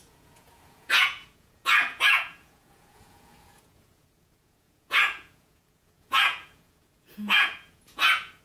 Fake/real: fake